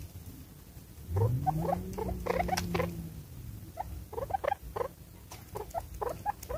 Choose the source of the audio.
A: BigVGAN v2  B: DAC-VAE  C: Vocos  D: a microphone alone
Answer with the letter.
D